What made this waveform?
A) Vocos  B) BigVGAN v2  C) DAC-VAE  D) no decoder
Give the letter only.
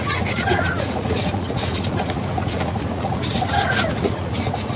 A